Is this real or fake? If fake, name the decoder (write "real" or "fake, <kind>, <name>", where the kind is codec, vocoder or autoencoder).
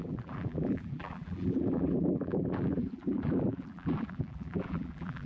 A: fake, vocoder, BigVGAN v2